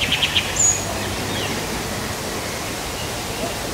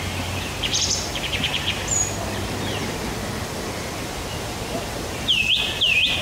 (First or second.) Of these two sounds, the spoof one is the second